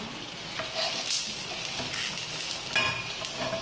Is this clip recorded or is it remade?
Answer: recorded